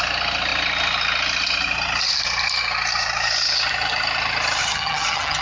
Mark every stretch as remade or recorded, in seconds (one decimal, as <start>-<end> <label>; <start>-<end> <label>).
0.0-4.6 recorded; 4.6-5.4 remade